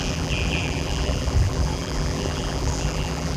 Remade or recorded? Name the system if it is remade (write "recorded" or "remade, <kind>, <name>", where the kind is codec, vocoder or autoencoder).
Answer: remade, vocoder, BigVGAN v2